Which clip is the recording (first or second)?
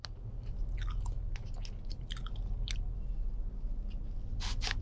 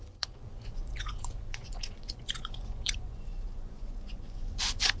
first